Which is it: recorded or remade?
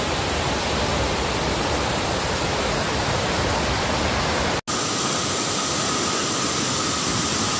recorded